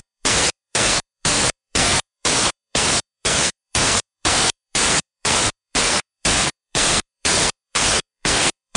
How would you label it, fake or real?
fake